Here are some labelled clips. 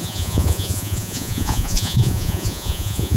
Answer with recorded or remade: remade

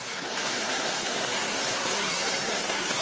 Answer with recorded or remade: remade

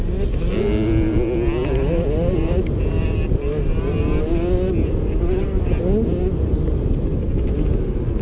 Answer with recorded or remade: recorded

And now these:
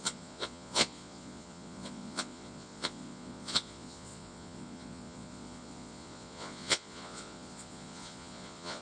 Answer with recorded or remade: remade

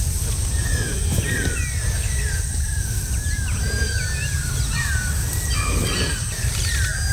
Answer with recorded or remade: recorded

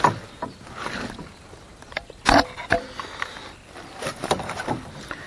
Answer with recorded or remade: recorded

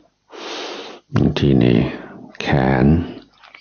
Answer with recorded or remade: recorded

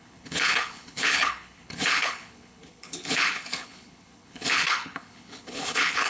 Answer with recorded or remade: remade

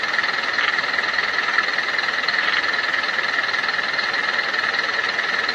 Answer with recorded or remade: recorded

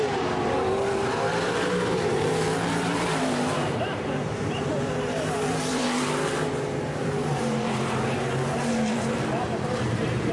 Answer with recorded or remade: remade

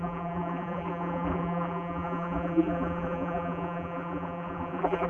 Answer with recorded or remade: remade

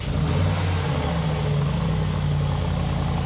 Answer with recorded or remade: recorded